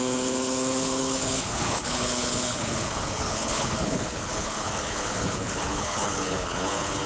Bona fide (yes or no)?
no